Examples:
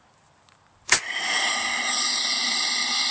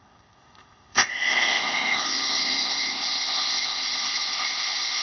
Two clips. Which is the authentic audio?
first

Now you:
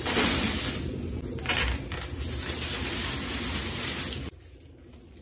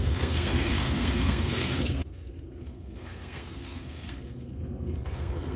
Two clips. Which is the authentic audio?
first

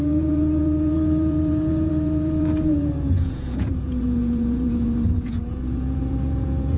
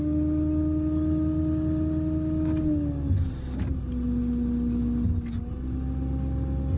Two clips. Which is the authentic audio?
second